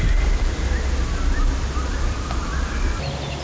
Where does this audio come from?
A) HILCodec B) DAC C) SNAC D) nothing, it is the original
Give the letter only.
D